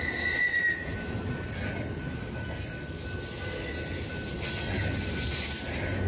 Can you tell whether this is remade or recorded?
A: recorded